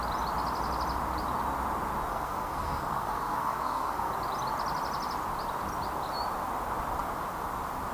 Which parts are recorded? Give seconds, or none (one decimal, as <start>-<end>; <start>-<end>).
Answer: 0.0-2.1; 4.1-7.9